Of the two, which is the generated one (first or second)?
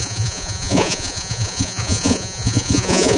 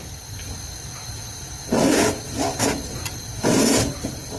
first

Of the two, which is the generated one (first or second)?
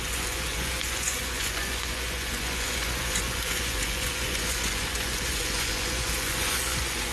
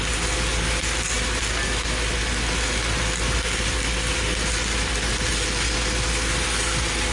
first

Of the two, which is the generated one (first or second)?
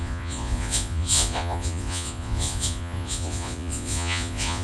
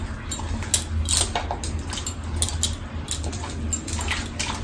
first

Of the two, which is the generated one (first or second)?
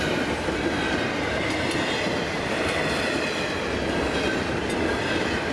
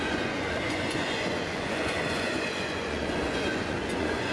second